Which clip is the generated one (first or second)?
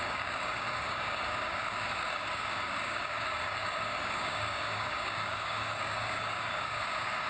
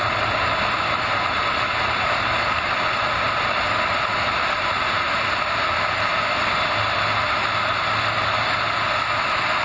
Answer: first